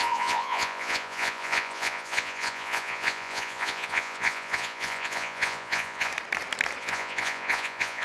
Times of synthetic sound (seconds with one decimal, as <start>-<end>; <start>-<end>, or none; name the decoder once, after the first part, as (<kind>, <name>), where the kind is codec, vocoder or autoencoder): 0.0-6.1 (vocoder, Vocos); 6.8-8.0